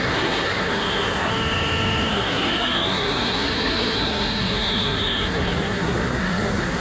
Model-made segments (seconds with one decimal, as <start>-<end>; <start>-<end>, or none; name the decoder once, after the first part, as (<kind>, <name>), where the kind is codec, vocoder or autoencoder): 0.0-1.3 (codec, SNAC); 2.1-6.8